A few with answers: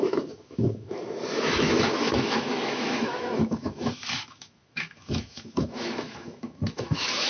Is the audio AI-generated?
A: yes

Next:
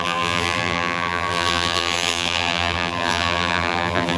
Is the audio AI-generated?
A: yes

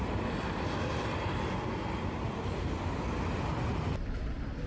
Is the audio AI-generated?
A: no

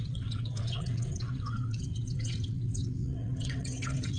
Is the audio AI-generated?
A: yes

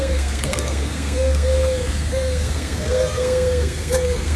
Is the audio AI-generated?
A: yes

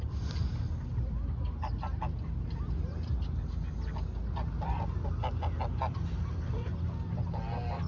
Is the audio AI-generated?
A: no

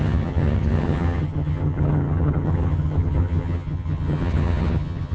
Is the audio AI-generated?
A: yes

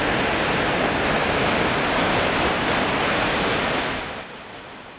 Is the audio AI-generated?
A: no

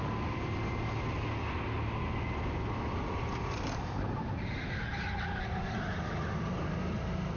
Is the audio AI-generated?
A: no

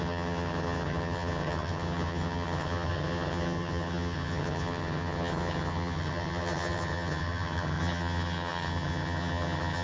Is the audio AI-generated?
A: yes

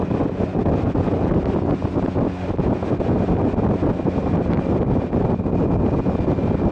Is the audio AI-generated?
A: no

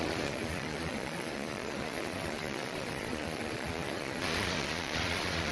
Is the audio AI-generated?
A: yes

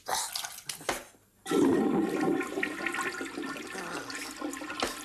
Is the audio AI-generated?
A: no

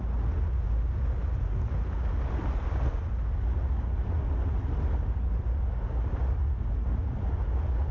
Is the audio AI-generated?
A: no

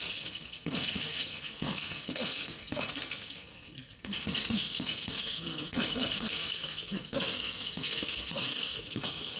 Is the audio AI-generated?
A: yes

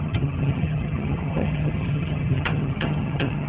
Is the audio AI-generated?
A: yes